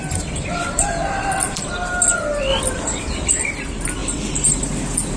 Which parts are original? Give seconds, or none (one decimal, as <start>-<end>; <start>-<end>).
1.7-2.5; 3.3-4.0; 4.8-5.2